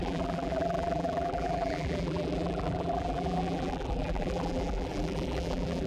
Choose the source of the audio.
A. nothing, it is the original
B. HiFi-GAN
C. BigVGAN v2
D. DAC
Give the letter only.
C